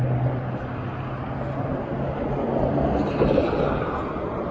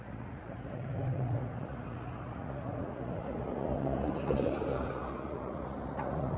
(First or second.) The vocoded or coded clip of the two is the second